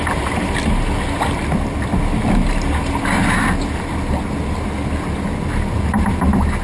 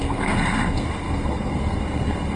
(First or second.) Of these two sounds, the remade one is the second